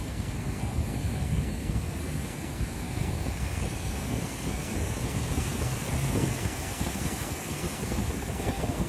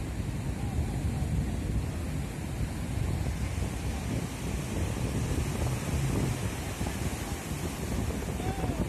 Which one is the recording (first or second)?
second